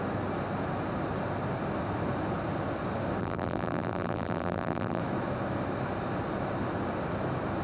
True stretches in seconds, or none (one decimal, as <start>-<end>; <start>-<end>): 0.0-3.2; 5.0-7.6